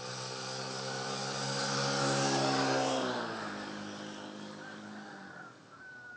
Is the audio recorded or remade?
remade